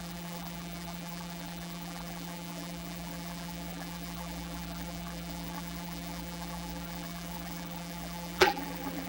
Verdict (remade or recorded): remade